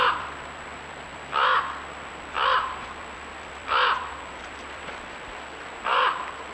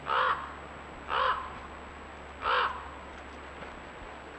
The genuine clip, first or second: second